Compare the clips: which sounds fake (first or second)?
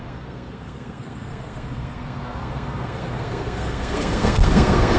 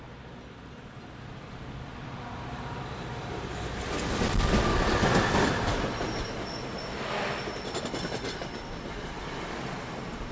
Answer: first